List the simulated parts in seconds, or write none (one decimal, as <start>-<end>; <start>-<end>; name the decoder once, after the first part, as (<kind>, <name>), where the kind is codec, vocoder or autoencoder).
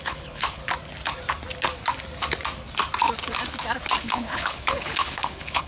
0.0-0.6 (codec, HILCodec); 4.0-5.7